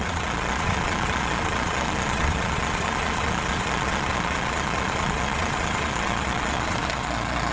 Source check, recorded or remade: remade